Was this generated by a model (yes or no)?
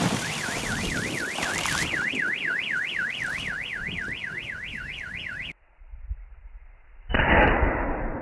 yes